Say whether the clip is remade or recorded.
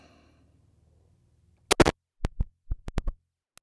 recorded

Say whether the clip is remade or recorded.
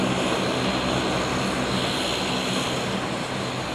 recorded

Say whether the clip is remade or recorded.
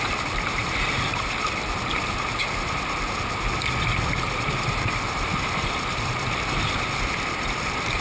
recorded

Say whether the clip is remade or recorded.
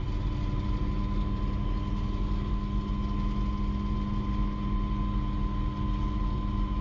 recorded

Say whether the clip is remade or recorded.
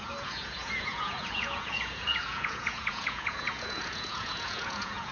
remade